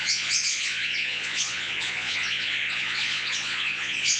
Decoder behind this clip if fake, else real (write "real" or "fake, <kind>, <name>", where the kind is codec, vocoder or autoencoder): fake, vocoder, Vocos